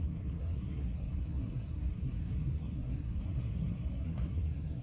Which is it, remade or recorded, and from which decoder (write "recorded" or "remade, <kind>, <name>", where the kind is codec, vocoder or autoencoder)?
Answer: remade, codec, SNAC